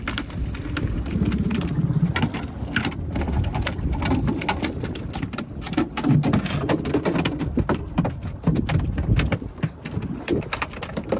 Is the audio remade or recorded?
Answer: recorded